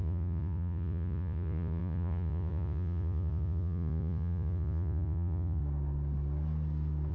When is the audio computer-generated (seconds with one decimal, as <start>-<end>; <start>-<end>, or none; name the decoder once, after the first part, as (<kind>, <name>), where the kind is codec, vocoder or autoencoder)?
0.0-5.6 (vocoder, Vocos)

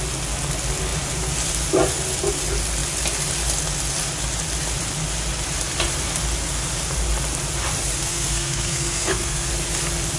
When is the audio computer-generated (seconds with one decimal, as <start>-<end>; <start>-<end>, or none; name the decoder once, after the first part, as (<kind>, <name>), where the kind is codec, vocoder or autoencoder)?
8.0-9.5 (codec, SNAC)